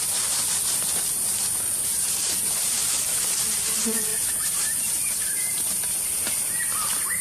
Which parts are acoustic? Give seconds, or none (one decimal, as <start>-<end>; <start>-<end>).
0.0-1.9; 3.6-4.1; 5.1-7.2